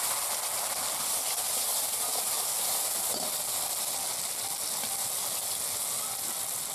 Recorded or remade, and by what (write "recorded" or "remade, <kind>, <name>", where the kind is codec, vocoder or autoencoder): recorded